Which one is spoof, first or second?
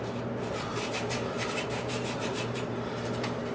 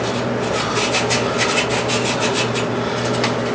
first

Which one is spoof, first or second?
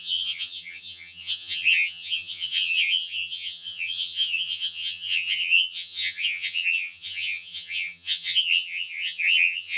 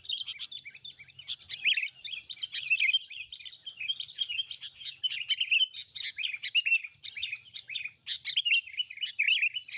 first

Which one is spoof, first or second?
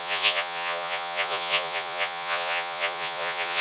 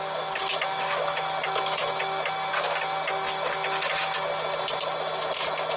first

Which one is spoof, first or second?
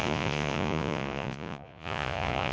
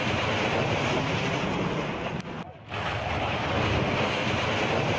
first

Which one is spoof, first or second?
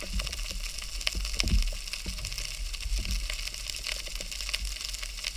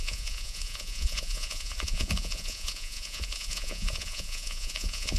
second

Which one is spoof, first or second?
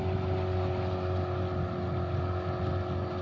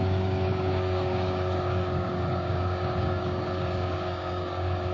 second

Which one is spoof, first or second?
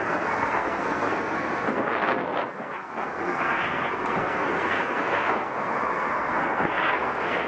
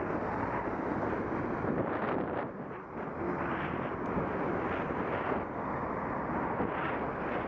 first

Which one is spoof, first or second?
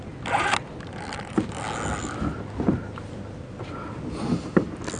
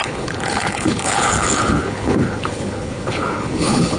second